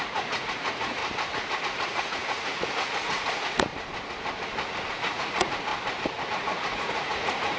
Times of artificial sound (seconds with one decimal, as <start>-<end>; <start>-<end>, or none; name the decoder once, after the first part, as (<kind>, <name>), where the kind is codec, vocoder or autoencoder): 0.0-1.0 (vocoder, Vocos); 1.6-3.7; 4.9-5.7; 6.3-7.6